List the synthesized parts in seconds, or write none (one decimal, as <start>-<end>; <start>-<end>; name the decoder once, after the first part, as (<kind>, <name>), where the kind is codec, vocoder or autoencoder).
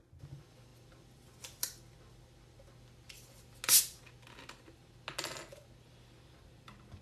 none